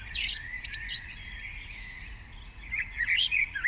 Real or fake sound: fake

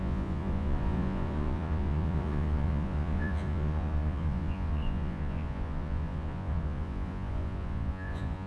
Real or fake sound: fake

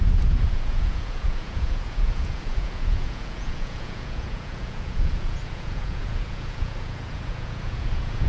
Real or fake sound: fake